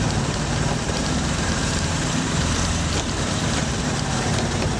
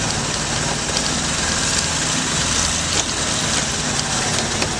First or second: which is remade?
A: first